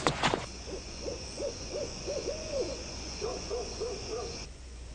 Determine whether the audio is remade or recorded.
remade